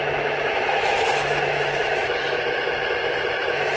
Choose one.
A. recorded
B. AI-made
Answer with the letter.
B